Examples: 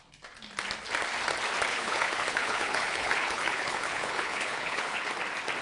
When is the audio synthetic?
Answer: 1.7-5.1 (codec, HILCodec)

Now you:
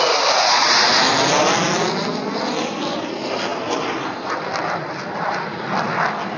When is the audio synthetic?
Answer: 3.5-4.8 (vocoder, BigVGAN v2)

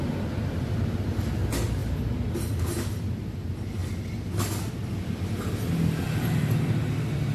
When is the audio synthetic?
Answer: none

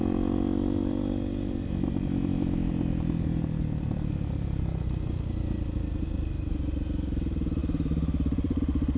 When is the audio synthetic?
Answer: 7.6-8.6 (vocoder, BigVGAN v2)

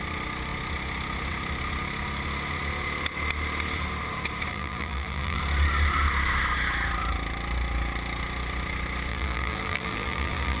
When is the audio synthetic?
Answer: 4.5-5.4 (vocoder, BigVGAN v2); 9.1-10.6

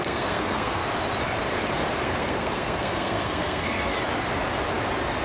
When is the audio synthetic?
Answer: 0.0-0.8 (codec, SNAC); 2.0-3.9

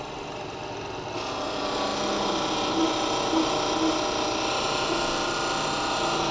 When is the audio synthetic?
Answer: none

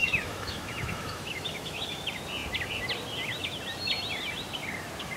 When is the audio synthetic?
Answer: 0.0-2.0 (autoencoder, DAC-VAE)